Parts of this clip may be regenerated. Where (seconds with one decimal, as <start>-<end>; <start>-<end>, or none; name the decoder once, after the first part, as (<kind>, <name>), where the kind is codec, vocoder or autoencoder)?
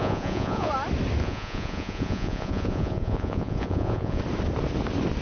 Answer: 0.0-0.7 (vocoder, Vocos); 1.2-4.2